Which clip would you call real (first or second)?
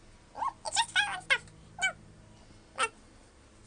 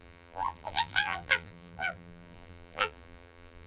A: first